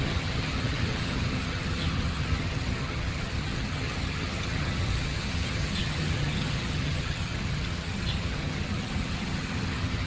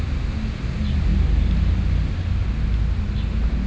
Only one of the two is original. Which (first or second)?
second